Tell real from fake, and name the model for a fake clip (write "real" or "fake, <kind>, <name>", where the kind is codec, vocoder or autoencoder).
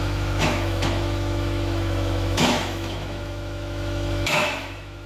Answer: fake, autoencoder, DAC-VAE